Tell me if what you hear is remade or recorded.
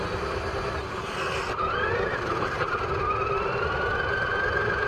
recorded